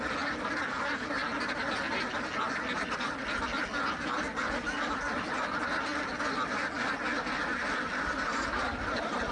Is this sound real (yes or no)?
yes